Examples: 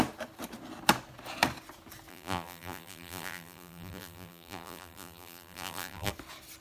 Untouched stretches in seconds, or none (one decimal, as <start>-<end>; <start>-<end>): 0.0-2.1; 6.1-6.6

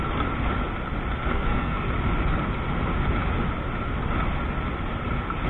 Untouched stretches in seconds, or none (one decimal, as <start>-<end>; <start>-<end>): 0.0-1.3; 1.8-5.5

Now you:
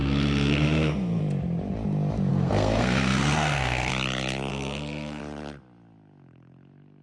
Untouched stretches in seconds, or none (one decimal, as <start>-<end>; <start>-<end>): 1.2-2.3; 3.9-4.5; 5.2-7.0

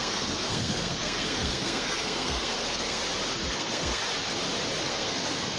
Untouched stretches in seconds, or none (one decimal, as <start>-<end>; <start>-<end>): 3.0-3.5; 4.0-4.8